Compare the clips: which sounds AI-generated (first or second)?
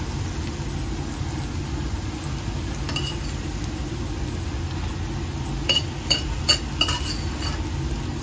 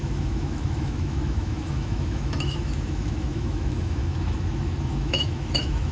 second